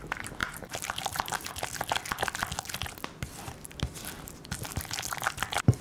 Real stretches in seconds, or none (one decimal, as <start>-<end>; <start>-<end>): 0.0-0.4; 1.5-5.8